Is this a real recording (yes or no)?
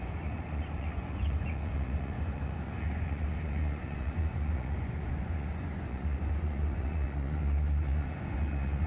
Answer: no